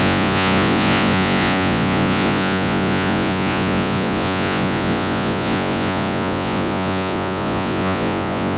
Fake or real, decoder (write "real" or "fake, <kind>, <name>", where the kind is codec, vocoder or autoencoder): fake, vocoder, Vocos